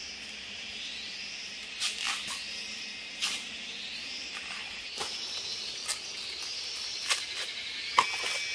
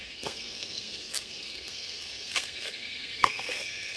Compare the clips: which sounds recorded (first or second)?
first